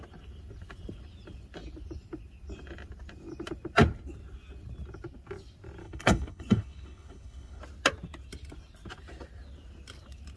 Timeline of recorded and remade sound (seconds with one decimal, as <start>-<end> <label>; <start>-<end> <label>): 0.0-5.8 recorded; 5.8-7.6 remade; 7.6-10.4 recorded